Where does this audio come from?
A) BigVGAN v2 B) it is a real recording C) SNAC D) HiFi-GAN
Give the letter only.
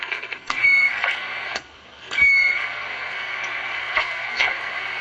C